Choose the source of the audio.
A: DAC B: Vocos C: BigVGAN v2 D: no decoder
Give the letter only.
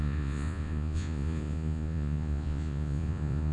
B